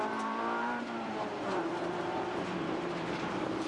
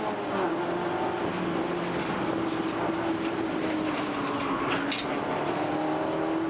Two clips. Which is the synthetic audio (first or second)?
first